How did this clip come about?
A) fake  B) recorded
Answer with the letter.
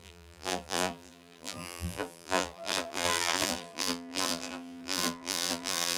A